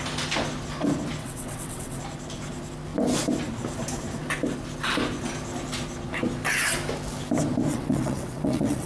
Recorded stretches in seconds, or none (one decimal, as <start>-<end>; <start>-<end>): 0.0-1.2; 2.0-7.7